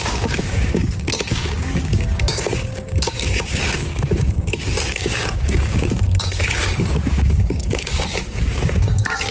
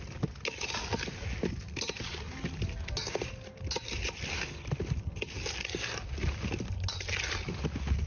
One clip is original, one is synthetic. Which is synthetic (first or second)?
first